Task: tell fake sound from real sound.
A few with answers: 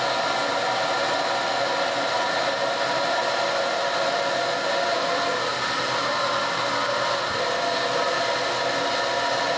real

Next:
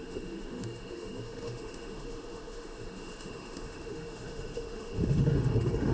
fake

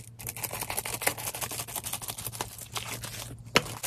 real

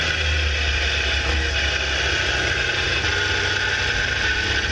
real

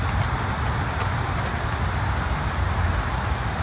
real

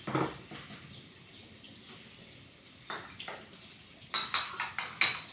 real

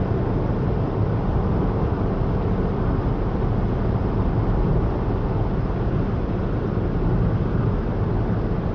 real